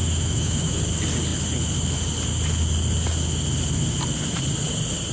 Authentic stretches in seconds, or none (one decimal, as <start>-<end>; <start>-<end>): 0.8-5.1